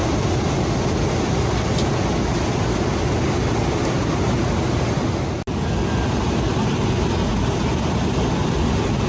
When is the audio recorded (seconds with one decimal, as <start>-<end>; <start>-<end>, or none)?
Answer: 0.0-9.1